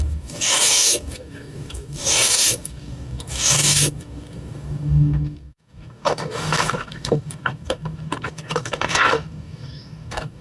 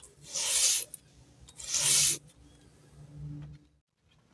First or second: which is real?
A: second